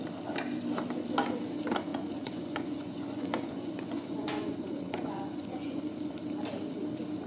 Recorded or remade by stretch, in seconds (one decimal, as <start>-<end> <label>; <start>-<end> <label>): 0.0-1.9 recorded; 1.9-5.8 remade; 5.8-7.3 recorded